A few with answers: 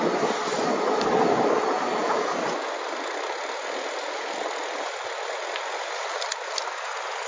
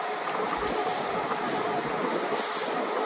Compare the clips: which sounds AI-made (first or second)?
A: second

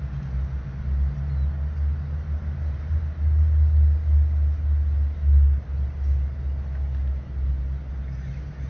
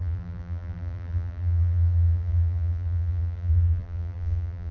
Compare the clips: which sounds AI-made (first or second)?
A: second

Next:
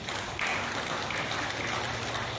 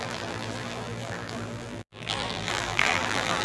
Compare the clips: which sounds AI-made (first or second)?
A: second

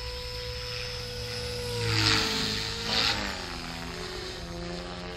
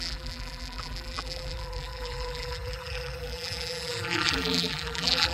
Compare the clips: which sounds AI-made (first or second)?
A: second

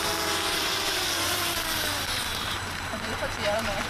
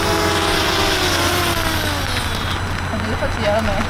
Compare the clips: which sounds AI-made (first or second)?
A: first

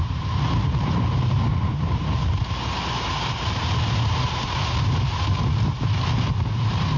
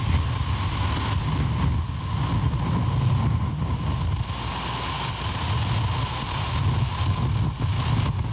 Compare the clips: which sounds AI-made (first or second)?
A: first